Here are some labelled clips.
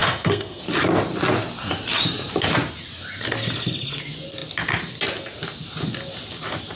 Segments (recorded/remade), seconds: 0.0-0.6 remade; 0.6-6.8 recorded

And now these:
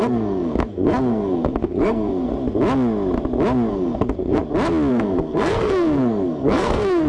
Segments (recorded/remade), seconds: 0.0-2.3 remade; 2.3-3.7 recorded; 3.7-4.4 remade; 4.4-4.9 recorded; 4.9-7.1 remade